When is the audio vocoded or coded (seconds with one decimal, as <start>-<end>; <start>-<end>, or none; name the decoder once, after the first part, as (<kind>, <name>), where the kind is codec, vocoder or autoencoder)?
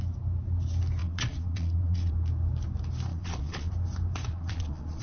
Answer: 1.0-2.1 (vocoder, Vocos); 3.1-3.7; 4.3-5.0